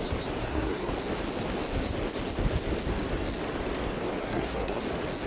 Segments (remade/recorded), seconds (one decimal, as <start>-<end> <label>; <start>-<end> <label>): 0.0-0.4 recorded; 0.4-0.9 remade; 0.9-4.2 recorded; 4.2-4.8 remade; 4.8-5.3 recorded